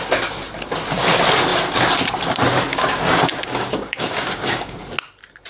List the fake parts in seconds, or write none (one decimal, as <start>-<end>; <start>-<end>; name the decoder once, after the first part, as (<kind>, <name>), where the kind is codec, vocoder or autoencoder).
2.7-4.8 (codec, DAC)